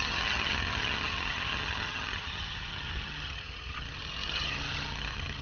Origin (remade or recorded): remade